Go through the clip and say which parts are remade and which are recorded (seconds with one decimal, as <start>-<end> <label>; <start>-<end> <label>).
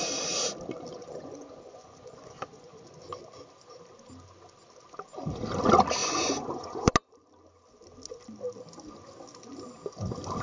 0.0-0.9 recorded; 0.9-2.9 remade; 2.9-6.0 recorded; 6.0-6.9 remade; 6.9-10.4 recorded